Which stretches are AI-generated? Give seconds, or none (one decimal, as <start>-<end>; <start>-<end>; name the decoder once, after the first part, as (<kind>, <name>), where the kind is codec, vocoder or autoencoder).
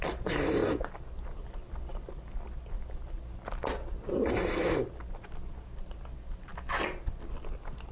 none